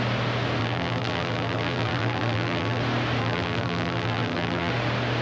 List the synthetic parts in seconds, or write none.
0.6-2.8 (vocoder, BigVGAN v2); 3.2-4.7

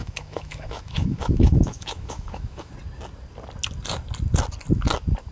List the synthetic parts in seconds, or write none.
0.0-2.7 (autoencoder, DAC-VAE)

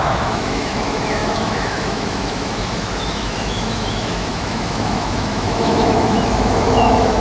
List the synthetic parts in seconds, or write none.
0.0-7.2 (autoencoder, DAC-VAE)

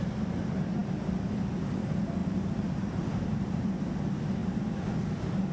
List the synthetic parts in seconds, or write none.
2.2-3.7 (vocoder, BigVGAN v2); 4.4-4.9